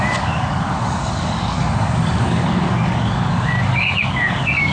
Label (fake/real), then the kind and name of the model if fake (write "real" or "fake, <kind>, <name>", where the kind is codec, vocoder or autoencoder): fake, codec, DAC